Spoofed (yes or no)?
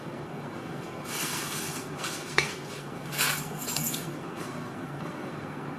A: yes